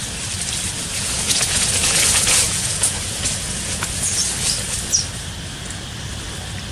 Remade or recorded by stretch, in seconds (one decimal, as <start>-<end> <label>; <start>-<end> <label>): 0.0-0.8 recorded; 0.8-4.2 remade; 4.2-6.7 recorded